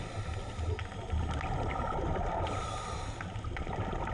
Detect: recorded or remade recorded